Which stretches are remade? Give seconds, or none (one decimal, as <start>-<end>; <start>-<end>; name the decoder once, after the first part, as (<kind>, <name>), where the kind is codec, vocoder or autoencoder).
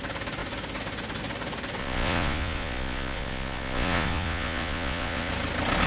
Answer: 1.8-5.3 (vocoder, Vocos)